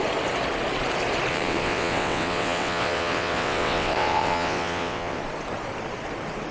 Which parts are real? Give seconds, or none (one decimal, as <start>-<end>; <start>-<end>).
0.0-1.3; 5.2-6.5

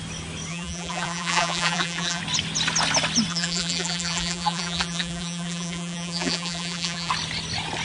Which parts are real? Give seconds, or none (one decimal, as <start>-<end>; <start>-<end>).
0.0-0.5; 2.2-3.3; 7.1-7.8

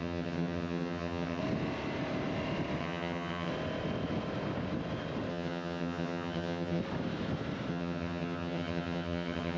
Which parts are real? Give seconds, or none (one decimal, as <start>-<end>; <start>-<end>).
1.4-2.8; 3.5-5.3; 6.8-7.7

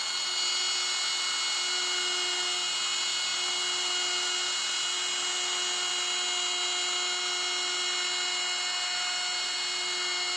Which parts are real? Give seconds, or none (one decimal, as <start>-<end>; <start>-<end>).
0.0-10.4

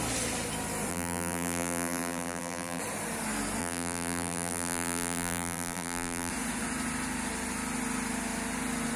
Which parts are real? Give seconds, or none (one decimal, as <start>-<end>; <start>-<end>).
0.0-0.9; 2.8-3.6; 6.3-9.0

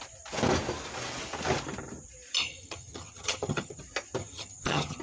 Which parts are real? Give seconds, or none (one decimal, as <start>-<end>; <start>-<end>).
0.0-2.4; 3.8-4.2